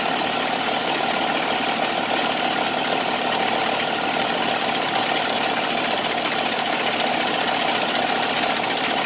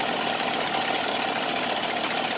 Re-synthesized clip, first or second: second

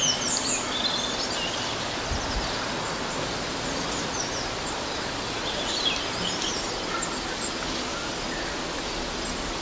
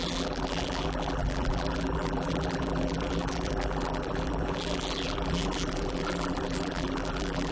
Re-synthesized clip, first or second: second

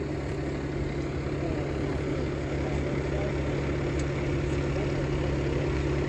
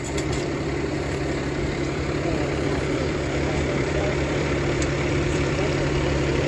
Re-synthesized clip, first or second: second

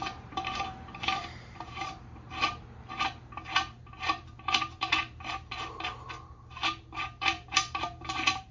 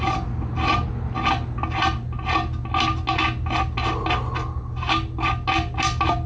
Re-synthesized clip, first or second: first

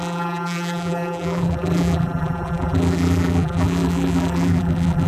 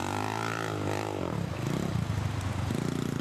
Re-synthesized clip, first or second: first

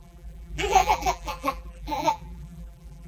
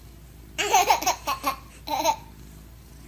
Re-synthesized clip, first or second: first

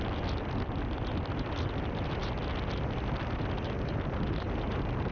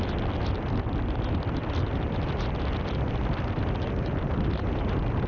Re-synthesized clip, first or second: second